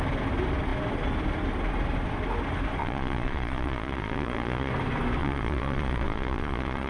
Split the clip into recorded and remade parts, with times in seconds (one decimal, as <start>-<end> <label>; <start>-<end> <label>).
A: 0.0-2.8 recorded; 2.8-4.7 remade; 4.7-5.2 recorded; 5.2-6.9 remade